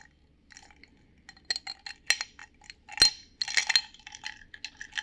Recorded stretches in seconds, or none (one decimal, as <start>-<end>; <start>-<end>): 0.0-5.0